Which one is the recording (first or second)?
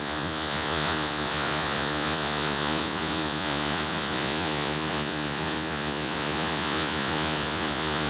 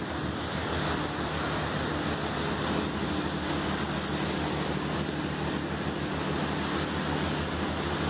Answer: second